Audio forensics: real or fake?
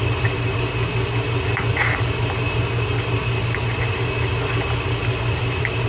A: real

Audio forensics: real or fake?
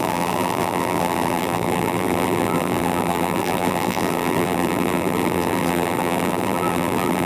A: fake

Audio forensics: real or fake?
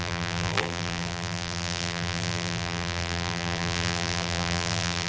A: fake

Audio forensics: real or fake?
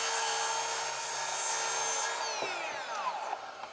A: real